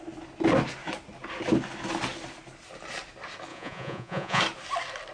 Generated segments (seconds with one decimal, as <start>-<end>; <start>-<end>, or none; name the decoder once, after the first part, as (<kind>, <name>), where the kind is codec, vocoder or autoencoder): 3.5-4.4 (vocoder, Vocos)